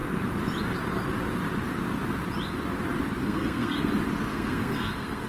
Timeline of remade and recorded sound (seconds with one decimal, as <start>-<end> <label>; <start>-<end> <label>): 0.0-3.2 recorded; 3.2-3.9 remade; 3.9-4.3 recorded; 4.3-5.3 remade